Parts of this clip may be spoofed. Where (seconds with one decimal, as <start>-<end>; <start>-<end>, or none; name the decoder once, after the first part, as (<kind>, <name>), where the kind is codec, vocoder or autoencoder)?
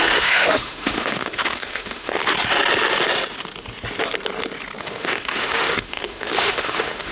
0.0-2.2 (autoencoder, DAC-VAE); 4.8-7.1